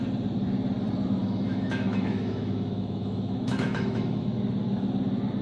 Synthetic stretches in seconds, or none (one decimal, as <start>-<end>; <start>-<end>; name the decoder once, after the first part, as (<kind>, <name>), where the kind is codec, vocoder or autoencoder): 1.2-4.4 (autoencoder, DAC-VAE)